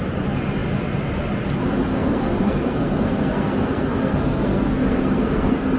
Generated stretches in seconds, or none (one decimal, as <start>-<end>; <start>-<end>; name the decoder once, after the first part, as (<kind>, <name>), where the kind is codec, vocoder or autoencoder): 1.9-5.8 (codec, SNAC)